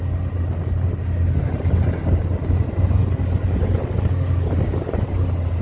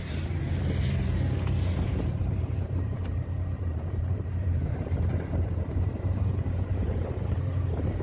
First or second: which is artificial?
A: second